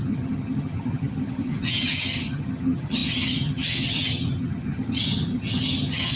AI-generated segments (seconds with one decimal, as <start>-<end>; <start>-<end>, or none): 0.0-6.2